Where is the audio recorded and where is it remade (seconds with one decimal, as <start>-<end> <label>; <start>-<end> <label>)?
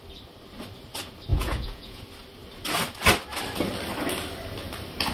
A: 0.0-1.3 recorded; 1.3-2.0 remade; 2.0-5.1 recorded